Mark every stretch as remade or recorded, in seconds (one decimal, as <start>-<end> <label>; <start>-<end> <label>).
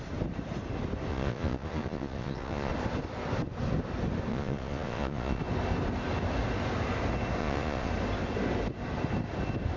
0.0-1.1 recorded; 1.1-2.7 remade; 2.7-4.3 recorded; 4.3-5.4 remade; 5.4-7.4 recorded; 7.4-7.9 remade; 7.9-9.8 recorded